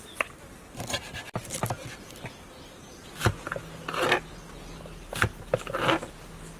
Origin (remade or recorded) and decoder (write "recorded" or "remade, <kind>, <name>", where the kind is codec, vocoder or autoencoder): recorded